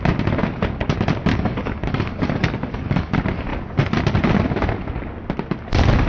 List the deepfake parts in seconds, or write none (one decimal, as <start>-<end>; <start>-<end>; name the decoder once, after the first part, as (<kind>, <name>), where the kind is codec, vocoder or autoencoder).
1.3-3.1 (codec, DAC)